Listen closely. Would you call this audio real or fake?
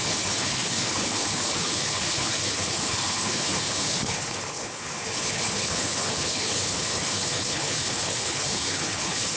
fake